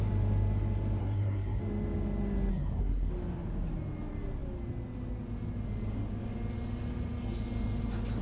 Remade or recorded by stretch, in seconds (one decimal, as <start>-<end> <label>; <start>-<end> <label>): 0.0-1.0 recorded; 1.0-1.6 remade; 1.6-2.5 recorded; 2.5-3.1 remade; 3.1-8.2 recorded